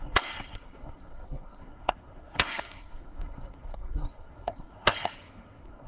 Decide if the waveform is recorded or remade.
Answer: remade